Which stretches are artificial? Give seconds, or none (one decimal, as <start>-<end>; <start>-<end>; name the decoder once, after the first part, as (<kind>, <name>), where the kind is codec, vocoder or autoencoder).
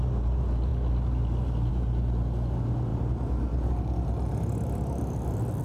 none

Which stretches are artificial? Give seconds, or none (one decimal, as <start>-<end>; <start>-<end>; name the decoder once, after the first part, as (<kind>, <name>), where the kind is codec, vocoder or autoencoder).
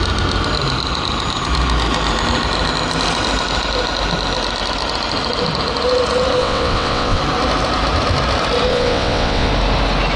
6.4-7.2 (vocoder, WaveNeXt); 8.7-9.5